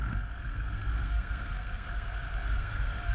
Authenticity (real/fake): fake